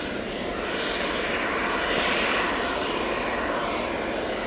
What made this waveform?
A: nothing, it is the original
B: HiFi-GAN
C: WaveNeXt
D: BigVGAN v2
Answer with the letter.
A